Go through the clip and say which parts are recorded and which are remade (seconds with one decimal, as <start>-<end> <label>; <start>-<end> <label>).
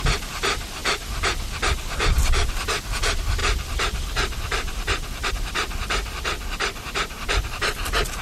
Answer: 0.0-0.8 remade; 0.8-2.3 recorded; 2.3-8.2 remade